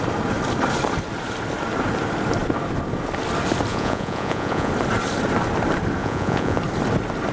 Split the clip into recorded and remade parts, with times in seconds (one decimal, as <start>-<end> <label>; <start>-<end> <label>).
0.0-3.7 recorded; 3.7-4.7 remade; 4.7-6.0 recorded; 6.0-6.6 remade; 6.6-7.3 recorded